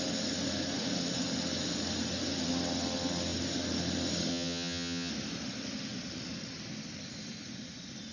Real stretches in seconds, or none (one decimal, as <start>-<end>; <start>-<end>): 0.0-4.3; 5.1-8.1